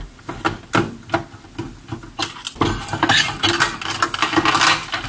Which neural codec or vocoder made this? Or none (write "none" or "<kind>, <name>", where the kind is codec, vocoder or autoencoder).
none